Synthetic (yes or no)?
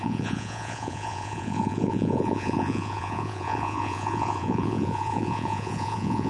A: yes